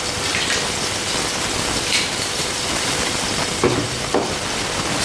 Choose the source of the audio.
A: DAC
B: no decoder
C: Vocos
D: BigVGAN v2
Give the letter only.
D